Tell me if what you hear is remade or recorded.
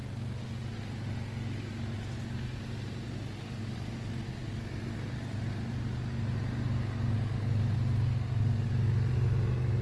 recorded